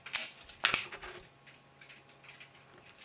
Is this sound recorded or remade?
recorded